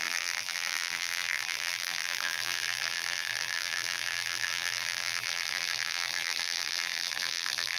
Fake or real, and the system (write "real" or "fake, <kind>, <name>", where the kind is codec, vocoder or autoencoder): fake, vocoder, BigVGAN v2